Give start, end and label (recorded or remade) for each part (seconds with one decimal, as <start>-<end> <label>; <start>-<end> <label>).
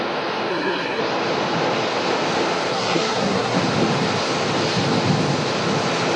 0.0-0.5 recorded; 0.5-1.0 remade; 1.0-2.7 recorded; 2.7-3.6 remade; 3.6-6.2 recorded